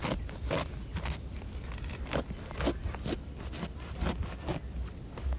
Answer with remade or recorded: recorded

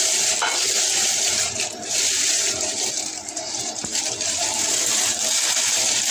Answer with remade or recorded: remade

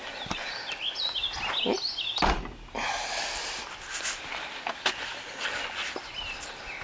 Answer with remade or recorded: recorded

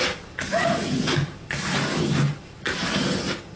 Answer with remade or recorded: recorded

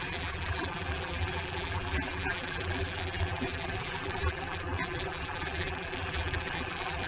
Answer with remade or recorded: remade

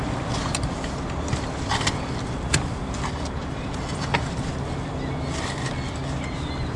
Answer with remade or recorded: recorded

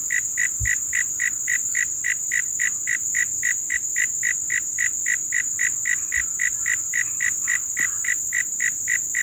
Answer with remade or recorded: remade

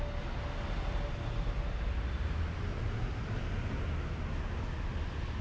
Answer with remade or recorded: recorded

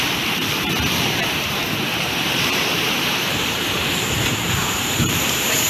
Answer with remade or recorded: remade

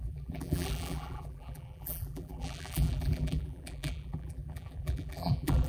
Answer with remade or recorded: remade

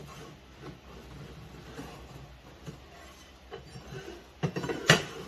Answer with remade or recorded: recorded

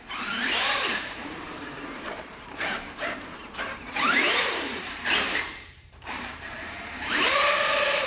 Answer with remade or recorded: remade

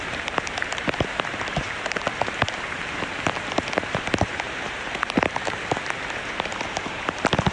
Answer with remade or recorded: remade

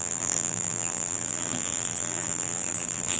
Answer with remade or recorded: remade